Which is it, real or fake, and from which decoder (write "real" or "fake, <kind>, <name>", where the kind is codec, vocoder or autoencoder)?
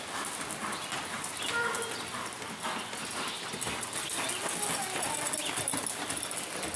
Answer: real